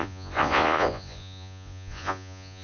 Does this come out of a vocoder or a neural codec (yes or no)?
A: yes